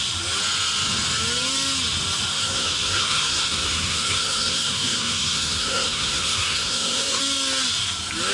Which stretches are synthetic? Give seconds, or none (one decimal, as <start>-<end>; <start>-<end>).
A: 2.3-7.2